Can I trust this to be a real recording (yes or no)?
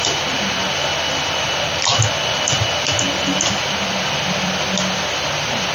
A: yes